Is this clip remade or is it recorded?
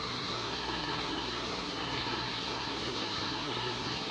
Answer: remade